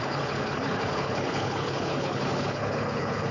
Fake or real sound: fake